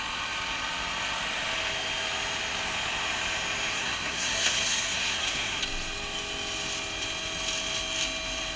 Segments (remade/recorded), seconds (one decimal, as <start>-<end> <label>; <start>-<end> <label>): 0.0-3.7 recorded; 3.7-5.6 remade; 5.6-8.6 recorded